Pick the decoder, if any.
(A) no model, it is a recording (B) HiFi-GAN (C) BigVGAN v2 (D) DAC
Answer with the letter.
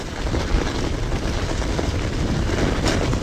A